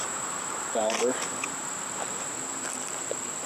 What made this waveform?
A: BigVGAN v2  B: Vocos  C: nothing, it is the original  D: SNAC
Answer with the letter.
A